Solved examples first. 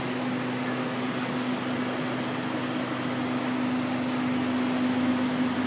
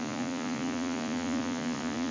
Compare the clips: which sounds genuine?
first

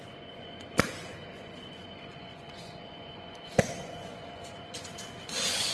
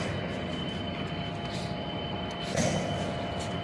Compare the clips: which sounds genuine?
second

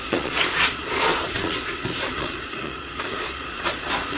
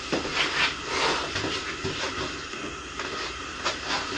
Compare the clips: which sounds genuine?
second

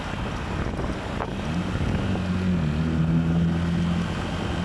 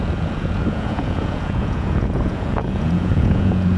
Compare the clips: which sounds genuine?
first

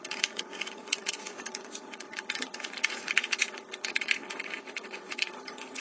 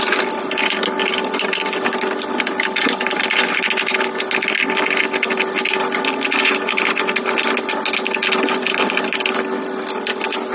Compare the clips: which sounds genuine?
second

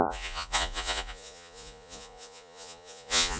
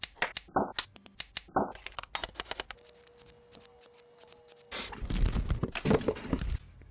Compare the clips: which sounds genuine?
second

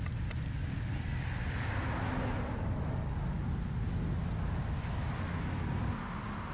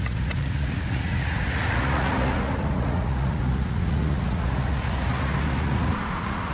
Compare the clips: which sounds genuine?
first